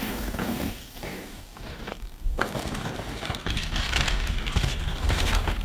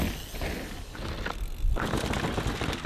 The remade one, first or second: first